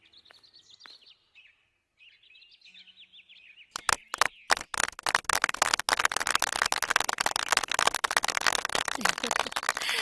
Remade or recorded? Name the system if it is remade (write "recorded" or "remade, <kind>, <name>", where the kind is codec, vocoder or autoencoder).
recorded